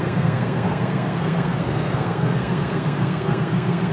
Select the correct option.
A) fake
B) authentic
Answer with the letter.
A